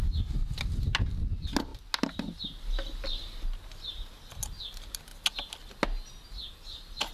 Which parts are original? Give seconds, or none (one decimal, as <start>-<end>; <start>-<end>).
0.0-7.1